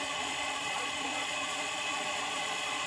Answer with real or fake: fake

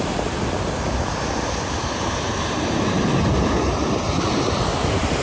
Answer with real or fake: real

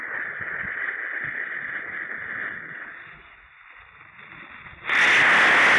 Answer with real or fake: real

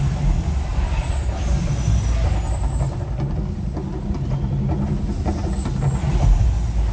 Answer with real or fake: real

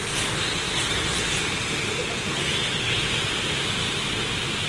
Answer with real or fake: real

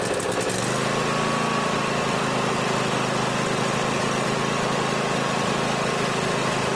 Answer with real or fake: real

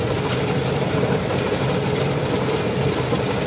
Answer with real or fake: real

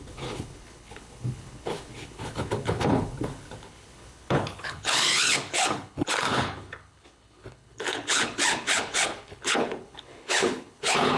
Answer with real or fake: fake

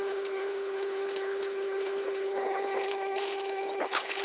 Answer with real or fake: fake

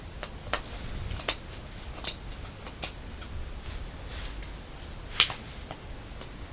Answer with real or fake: real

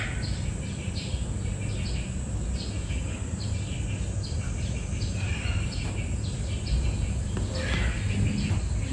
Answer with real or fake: real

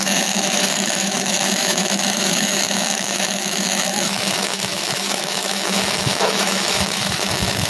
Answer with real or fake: fake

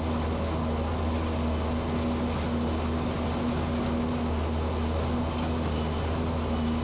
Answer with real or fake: real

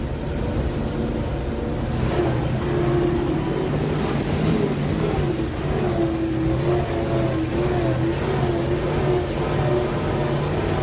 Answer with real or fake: real